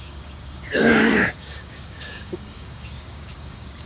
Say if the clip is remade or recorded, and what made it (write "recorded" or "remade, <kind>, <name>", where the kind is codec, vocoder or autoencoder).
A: remade, codec, DAC